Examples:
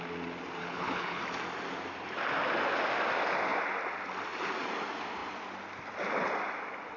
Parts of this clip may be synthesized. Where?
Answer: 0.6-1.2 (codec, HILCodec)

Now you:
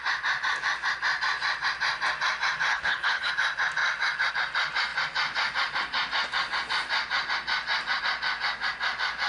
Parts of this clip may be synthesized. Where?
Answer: 2.7-3.3 (codec, HILCodec)

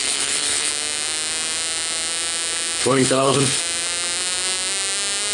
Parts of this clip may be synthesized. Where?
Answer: 0.0-0.7 (codec, HILCodec); 2.8-3.6

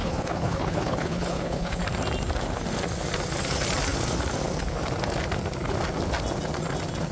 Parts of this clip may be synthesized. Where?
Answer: 0.0-1.8 (codec, HILCodec)

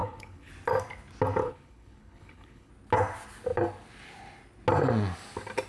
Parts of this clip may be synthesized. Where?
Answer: 0.0-0.5 (codec, HILCodec); 1.4-2.7

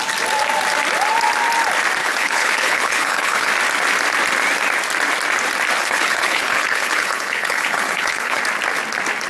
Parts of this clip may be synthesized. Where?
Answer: 2.0-3.5 (codec, HILCodec); 5.8-8.4